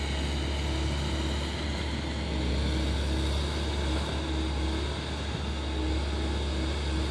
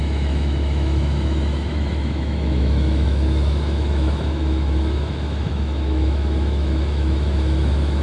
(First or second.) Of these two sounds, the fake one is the second